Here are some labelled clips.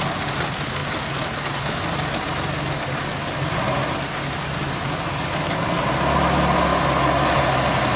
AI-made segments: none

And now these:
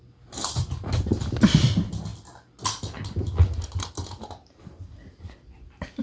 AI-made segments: none

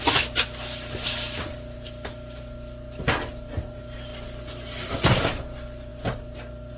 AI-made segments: none

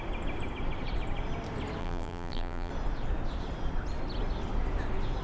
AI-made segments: 1.8-2.7 (vocoder, BigVGAN v2)

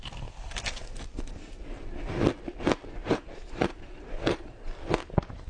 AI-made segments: 3.0-4.5 (vocoder, BigVGAN v2)

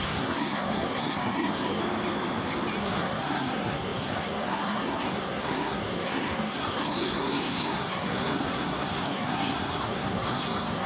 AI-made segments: 0.0-1.8 (codec, SNAC); 2.8-10.9